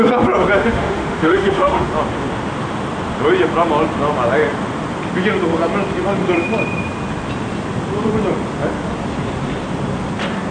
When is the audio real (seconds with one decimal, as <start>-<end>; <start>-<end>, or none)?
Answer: 0.0-0.6; 1.9-10.5